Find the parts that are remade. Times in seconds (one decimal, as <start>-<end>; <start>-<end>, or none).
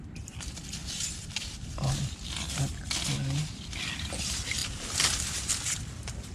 none